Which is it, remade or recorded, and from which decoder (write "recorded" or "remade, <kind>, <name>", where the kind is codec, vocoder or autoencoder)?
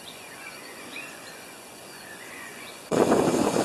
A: remade, vocoder, Vocos